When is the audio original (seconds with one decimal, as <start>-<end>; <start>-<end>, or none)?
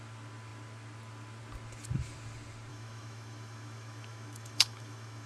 0.0-2.7